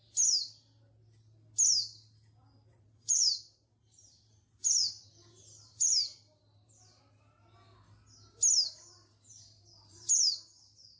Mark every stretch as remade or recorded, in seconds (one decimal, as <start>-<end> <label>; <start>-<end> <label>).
0.0-2.7 recorded; 2.7-7.0 remade; 7.0-9.3 recorded; 9.3-10.1 remade; 10.1-11.0 recorded